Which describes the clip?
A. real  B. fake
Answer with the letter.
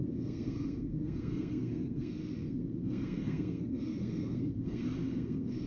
B